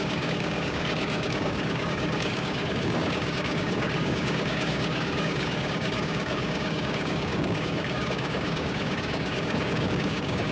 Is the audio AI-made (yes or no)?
yes